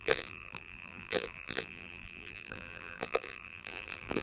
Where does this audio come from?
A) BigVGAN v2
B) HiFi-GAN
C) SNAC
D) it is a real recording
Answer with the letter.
A